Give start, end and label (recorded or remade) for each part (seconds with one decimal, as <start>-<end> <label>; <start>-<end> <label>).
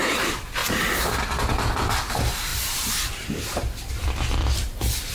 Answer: 0.0-0.6 remade; 0.6-1.5 recorded; 1.5-5.1 remade